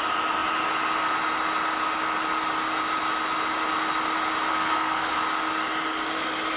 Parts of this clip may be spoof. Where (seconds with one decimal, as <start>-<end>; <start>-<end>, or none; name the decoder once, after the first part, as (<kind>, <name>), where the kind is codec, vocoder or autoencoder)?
4.5-5.2 (codec, SNAC)